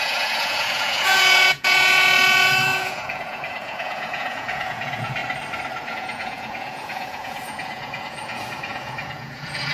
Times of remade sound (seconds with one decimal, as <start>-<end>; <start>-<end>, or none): 0.0-5.2; 5.9-9.7